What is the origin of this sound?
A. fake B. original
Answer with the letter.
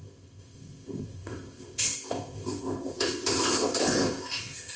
A